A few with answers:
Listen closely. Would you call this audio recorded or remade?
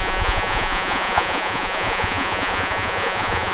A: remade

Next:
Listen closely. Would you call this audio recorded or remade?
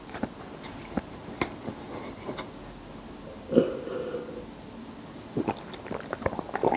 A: recorded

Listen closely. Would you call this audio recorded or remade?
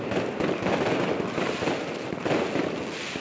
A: recorded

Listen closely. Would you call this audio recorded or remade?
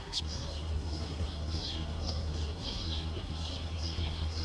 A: remade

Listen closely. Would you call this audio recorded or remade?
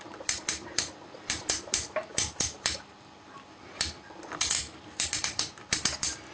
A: remade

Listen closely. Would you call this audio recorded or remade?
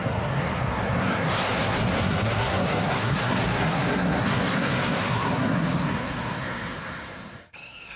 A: remade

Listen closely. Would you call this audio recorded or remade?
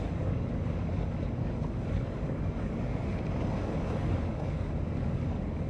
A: remade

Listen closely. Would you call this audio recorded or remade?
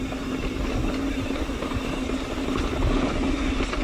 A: recorded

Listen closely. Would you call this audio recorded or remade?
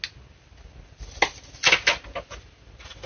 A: recorded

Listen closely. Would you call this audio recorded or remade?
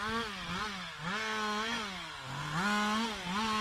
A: recorded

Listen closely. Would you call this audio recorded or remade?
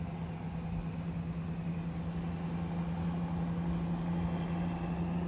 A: recorded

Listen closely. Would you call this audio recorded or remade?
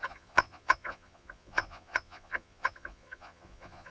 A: remade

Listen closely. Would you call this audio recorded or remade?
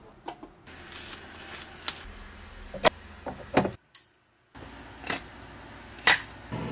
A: recorded